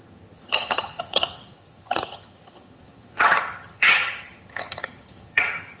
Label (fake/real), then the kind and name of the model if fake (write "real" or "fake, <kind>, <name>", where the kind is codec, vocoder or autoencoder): fake, vocoder, HiFi-GAN